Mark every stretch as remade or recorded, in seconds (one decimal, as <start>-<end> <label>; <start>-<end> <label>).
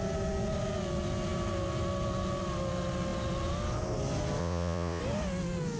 0.0-4.4 recorded; 4.4-5.0 remade; 5.0-5.8 recorded